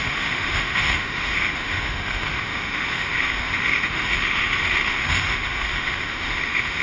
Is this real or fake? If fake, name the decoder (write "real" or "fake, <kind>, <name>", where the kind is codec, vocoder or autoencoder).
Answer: fake, autoencoder, DAC-VAE